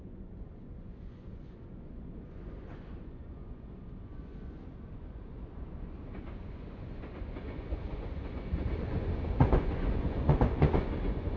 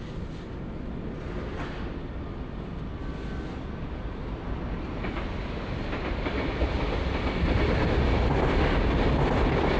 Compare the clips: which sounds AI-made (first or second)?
first